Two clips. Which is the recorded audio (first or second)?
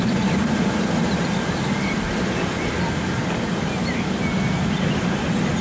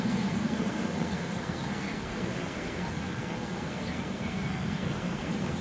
first